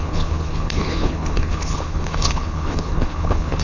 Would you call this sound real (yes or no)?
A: no